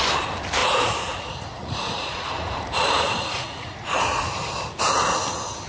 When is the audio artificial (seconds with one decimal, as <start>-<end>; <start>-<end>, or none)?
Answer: 0.6-4.0